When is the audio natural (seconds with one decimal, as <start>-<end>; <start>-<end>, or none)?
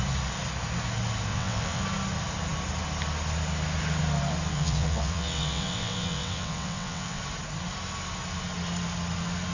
0.0-1.3; 1.8-4.5; 7.2-9.5